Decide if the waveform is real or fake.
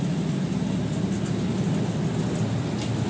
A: real